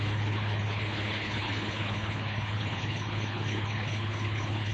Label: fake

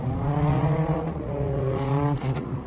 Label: fake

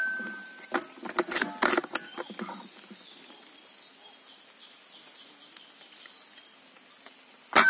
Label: real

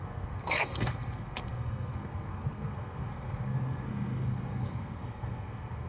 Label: fake